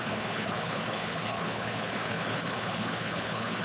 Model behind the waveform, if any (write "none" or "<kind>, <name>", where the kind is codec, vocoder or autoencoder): codec, HILCodec